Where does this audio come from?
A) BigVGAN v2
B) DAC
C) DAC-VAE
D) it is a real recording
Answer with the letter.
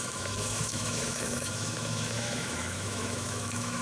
C